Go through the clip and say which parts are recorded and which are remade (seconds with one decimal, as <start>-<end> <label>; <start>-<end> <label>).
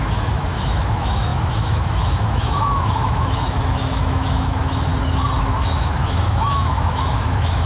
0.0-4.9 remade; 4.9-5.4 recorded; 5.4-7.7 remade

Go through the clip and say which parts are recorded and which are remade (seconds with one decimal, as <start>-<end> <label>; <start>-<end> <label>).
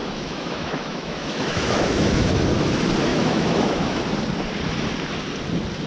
0.0-2.3 remade; 2.3-3.1 recorded; 3.1-4.0 remade; 4.0-5.9 recorded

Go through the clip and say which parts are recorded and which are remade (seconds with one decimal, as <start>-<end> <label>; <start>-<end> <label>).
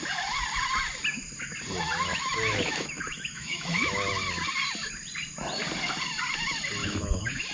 0.0-2.1 recorded; 2.1-4.1 remade; 4.1-6.8 recorded; 6.8-7.5 remade